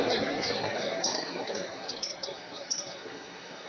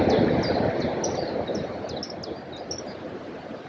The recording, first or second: second